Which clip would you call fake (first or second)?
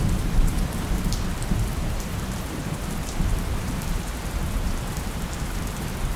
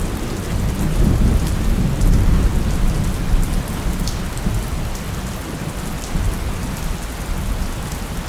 first